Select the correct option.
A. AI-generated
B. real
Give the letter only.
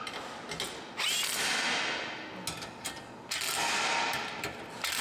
B